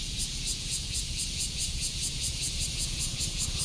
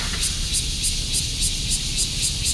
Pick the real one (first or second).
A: second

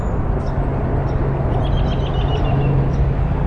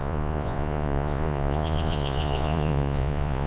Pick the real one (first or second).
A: first